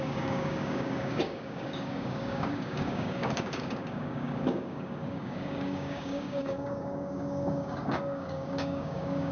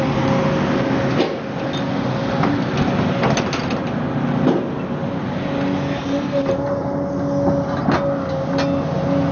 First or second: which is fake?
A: first